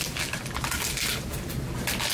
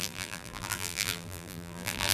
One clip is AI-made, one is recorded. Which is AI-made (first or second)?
second